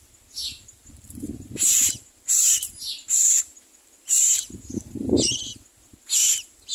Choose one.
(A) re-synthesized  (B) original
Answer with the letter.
A